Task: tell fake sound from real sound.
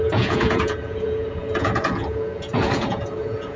fake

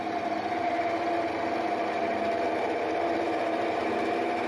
real